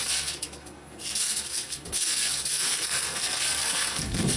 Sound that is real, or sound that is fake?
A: fake